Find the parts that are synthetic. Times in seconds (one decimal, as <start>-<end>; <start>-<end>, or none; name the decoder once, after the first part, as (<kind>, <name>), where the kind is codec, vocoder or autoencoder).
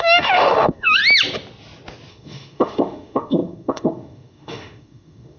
0.0-1.0 (autoencoder, DAC-VAE); 2.1-5.4